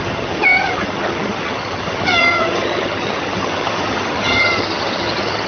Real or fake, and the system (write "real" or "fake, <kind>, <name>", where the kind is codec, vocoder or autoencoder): fake, vocoder, HiFi-GAN